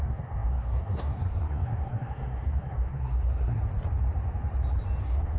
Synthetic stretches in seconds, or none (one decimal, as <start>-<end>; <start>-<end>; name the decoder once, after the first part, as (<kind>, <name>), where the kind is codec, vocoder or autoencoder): 0.0-3.6 (codec, SNAC); 5.0-5.4